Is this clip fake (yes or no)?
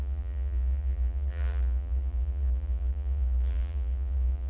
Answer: yes